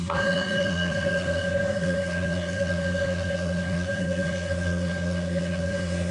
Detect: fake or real fake